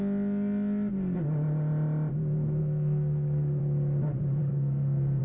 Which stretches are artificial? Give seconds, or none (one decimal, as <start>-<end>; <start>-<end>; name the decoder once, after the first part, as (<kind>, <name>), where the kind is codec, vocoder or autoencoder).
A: 2.6-3.6 (codec, SNAC); 4.4-5.2